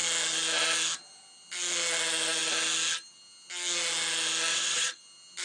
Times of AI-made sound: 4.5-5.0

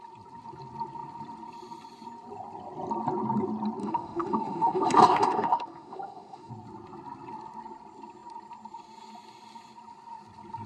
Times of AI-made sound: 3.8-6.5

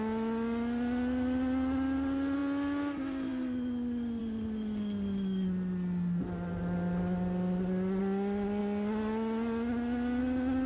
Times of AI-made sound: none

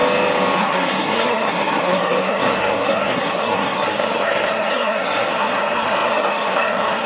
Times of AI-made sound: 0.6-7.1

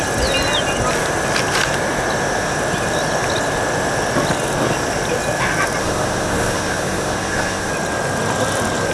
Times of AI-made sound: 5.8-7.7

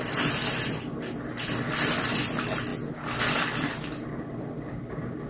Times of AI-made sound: 0.0-5.3

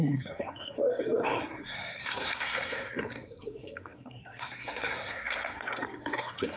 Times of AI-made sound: 0.0-6.6

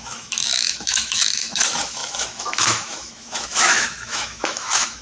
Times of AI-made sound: 0.0-5.0